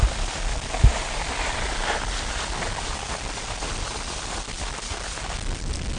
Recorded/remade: recorded